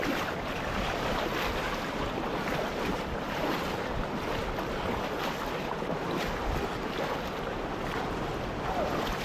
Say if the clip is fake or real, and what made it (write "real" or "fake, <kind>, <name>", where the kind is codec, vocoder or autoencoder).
real